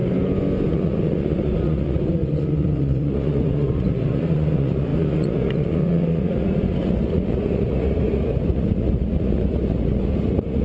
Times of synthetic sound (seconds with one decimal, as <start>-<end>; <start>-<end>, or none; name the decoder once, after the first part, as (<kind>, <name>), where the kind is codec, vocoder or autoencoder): 0.7-10.6 (vocoder, Vocos)